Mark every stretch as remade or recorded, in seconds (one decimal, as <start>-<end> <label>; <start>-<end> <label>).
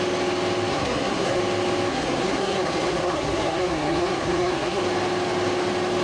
0.0-0.7 recorded; 0.7-1.4 remade; 1.4-1.9 recorded; 1.9-4.8 remade; 4.8-6.0 recorded